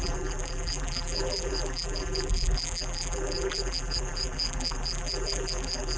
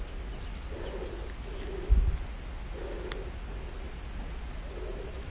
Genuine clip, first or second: second